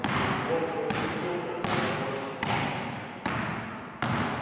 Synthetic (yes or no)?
no